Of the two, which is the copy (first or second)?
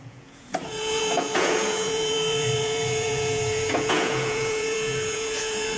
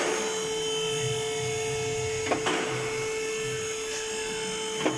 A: first